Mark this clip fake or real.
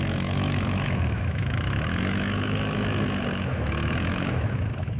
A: fake